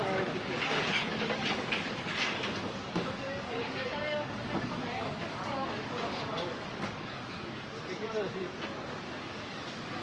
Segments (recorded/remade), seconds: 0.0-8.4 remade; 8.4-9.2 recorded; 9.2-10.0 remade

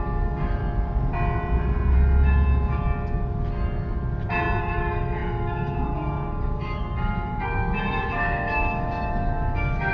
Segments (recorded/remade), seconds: 0.0-0.6 remade; 0.6-4.6 recorded; 4.6-9.9 remade